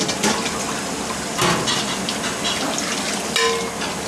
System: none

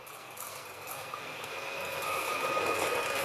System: codec, SNAC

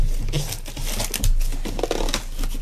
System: none